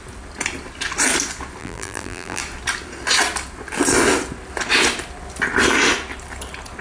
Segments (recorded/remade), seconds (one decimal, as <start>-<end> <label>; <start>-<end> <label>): 0.0-1.6 recorded; 1.6-2.4 remade; 2.4-6.8 recorded